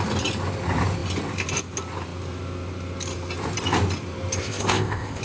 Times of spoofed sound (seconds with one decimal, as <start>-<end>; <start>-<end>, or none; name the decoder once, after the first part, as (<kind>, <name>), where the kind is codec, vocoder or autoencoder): 4.4-5.2 (codec, ZipCodec)